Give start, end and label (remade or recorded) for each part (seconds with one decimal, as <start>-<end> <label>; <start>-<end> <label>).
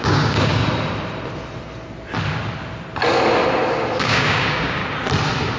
0.0-0.6 remade; 0.6-4.0 recorded; 4.0-4.8 remade; 4.8-5.6 recorded